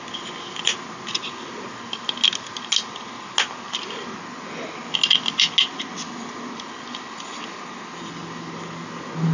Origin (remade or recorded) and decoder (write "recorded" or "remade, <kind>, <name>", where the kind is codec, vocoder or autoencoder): recorded